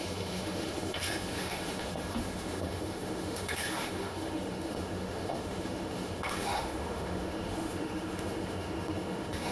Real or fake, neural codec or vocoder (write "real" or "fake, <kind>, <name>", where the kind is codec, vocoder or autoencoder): fake, autoencoder, DAC-VAE